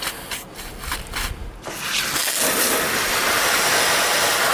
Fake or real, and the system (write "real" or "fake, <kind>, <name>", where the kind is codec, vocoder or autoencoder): real